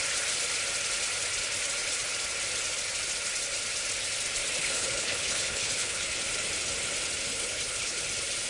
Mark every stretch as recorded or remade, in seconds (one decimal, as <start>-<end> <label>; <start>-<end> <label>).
0.0-4.6 recorded; 4.6-6.0 remade; 6.0-7.3 recorded; 7.3-8.0 remade; 8.0-8.5 recorded